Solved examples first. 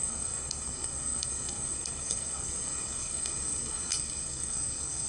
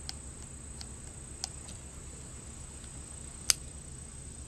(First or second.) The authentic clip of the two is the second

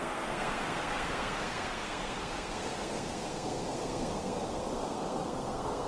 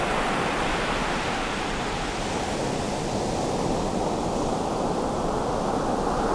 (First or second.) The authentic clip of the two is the second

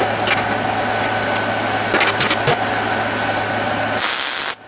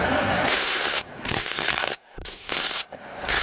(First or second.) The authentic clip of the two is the first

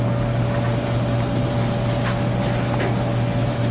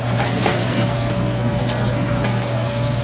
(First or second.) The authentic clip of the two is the first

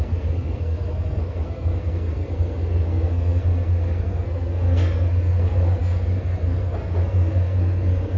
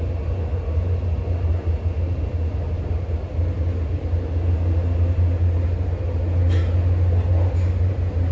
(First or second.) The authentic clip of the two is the second